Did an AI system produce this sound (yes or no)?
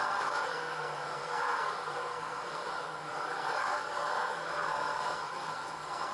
yes